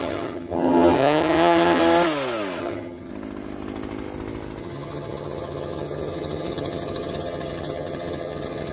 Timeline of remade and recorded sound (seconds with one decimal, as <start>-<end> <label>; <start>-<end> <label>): 0.0-1.8 remade; 1.8-2.6 recorded; 2.6-3.1 remade; 3.1-4.6 recorded; 4.6-8.7 remade